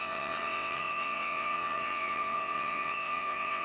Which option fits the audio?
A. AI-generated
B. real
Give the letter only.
A